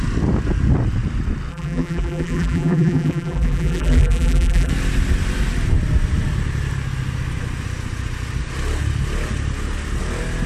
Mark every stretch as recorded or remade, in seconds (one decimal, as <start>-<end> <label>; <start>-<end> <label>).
0.0-1.5 recorded; 1.5-4.7 remade; 4.7-10.5 recorded